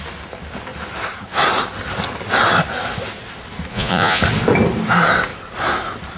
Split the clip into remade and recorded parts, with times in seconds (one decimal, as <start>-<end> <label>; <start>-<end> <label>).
0.0-3.7 recorded; 3.7-4.2 remade; 4.2-6.2 recorded